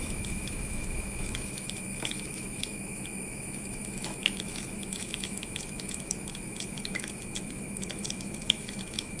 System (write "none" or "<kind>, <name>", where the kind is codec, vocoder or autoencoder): autoencoder, DAC-VAE